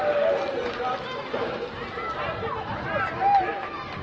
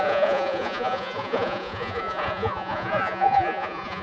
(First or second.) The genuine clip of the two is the first